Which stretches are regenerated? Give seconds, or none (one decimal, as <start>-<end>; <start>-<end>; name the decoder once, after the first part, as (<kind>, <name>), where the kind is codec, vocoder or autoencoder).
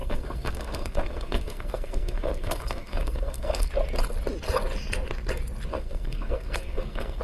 0.0-3.7 (codec, SNAC); 5.7-7.2